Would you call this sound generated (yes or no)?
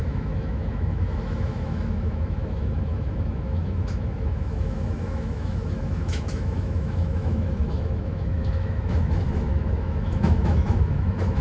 yes